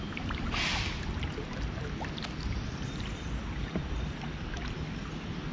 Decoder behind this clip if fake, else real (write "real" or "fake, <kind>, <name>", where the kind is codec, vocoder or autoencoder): real